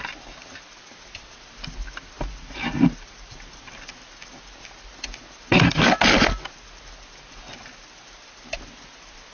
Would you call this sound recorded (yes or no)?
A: yes